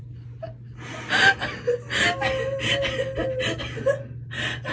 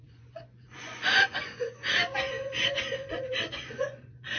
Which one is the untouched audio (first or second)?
first